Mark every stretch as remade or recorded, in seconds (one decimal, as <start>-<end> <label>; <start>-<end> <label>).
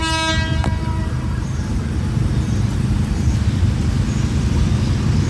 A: 0.0-0.5 recorded; 0.5-3.3 remade; 3.3-5.3 recorded